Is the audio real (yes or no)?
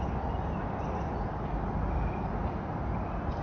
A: yes